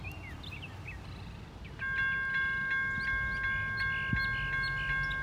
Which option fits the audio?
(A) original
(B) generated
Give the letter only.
A